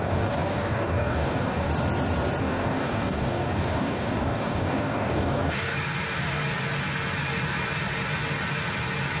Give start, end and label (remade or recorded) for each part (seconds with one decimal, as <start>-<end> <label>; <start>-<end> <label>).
0.0-1.7 remade; 1.7-2.4 recorded; 2.4-5.7 remade; 5.7-9.2 recorded